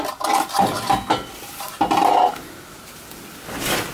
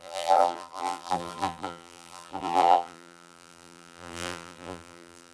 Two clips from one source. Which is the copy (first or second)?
second